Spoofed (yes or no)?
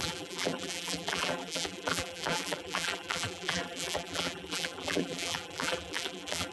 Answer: yes